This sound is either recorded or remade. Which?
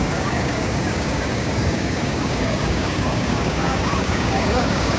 remade